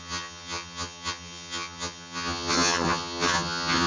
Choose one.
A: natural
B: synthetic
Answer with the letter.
B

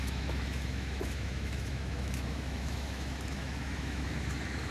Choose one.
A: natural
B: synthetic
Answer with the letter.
B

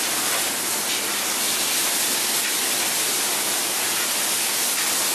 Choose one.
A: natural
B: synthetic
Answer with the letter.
A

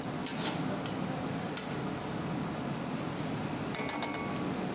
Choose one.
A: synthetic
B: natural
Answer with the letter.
B